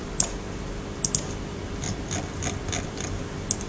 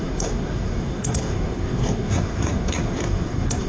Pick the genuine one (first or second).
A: first